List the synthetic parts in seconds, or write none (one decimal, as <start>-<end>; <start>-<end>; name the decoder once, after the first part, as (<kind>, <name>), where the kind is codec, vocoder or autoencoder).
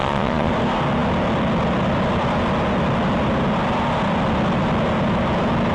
0.0-0.5 (vocoder, Vocos)